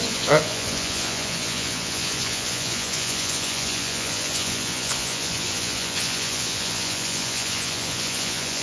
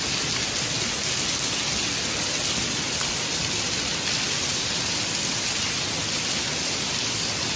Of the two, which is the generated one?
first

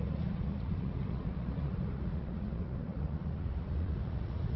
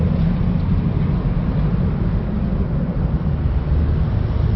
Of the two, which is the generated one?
first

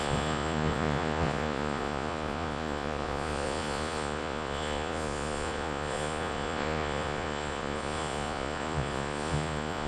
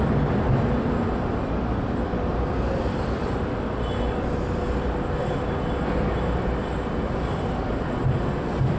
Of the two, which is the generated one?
first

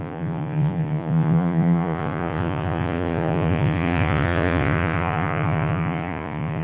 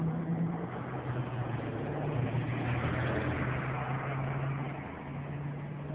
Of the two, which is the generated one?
first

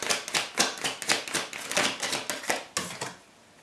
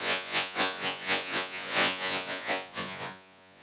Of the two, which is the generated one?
second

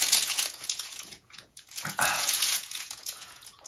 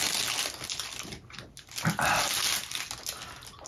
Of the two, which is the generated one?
first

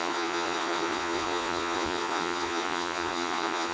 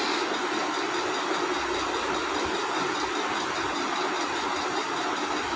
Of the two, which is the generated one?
first